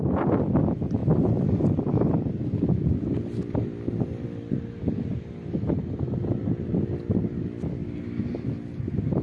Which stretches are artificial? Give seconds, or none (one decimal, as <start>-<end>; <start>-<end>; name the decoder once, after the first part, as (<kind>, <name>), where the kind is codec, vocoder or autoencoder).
none